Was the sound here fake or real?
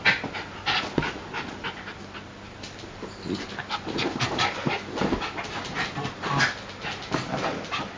real